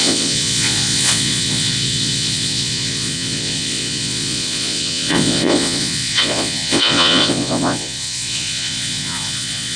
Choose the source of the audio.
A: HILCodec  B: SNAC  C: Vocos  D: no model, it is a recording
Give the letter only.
C